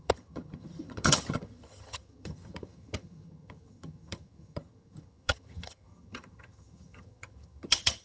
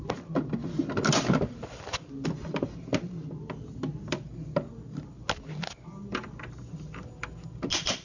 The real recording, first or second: second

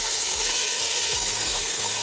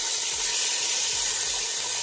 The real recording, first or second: second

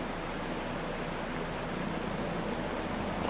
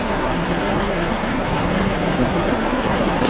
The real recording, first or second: first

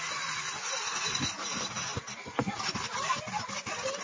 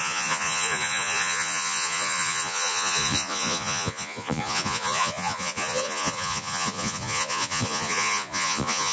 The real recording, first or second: first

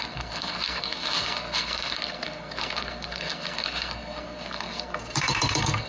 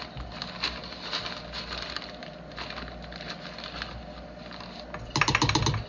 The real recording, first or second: second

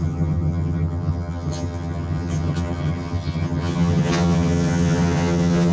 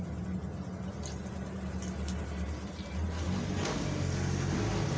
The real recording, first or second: second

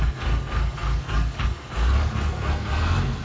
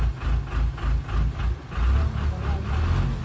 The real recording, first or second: second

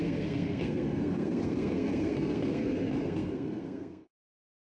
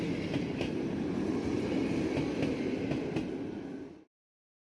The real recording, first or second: second